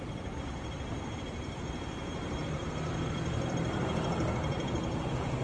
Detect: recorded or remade remade